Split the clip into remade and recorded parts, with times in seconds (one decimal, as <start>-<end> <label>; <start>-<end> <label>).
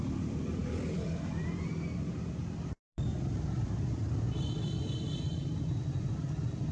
0.0-5.3 remade; 5.3-5.8 recorded; 5.8-6.7 remade